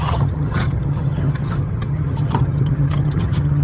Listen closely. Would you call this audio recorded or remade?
remade